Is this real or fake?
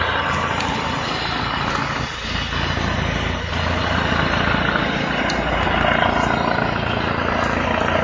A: real